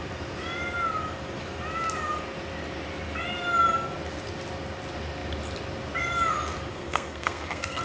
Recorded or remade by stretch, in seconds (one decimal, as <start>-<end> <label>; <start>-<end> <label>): 0.0-6.7 recorded; 6.7-7.8 remade